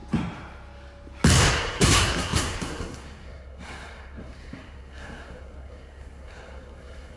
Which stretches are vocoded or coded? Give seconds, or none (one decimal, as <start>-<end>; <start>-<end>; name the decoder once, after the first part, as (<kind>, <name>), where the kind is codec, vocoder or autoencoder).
1.5-7.2 (codec, SNAC)

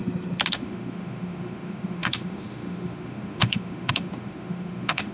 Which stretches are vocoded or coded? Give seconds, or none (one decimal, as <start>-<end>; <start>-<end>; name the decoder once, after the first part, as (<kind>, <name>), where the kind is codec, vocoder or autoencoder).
0.5-5.1 (autoencoder, DAC-VAE)

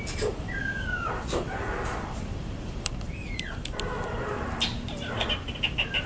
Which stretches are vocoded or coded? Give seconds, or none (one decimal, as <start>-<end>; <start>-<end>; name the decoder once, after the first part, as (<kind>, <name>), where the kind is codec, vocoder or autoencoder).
0.6-1.1 (codec, DAC)

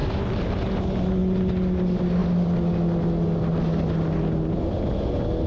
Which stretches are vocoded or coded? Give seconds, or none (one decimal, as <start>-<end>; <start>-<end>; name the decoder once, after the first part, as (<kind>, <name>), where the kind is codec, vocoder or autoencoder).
0.0-0.5 (vocoder, BigVGAN v2)